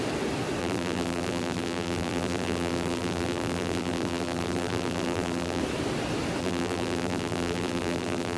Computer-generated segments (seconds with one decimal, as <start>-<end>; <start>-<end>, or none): 0.6-5.6; 6.4-8.4